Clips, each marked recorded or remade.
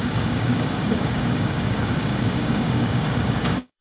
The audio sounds remade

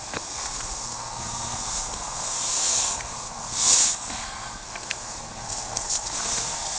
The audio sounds remade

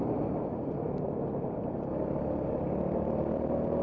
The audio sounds recorded